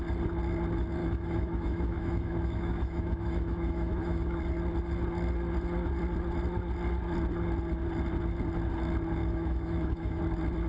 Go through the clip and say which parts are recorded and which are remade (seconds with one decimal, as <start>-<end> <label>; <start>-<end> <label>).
0.0-1.0 recorded; 1.0-4.4 remade; 4.4-9.2 recorded; 9.2-10.2 remade; 10.2-10.7 recorded